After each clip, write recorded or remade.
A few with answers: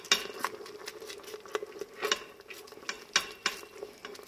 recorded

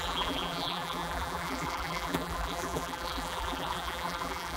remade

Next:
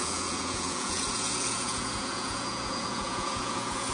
remade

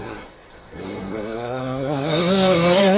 remade